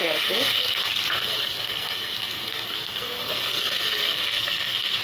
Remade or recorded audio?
remade